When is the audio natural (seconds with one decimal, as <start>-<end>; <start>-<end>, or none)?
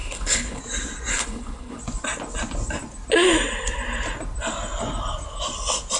0.6-1.1; 1.8-6.0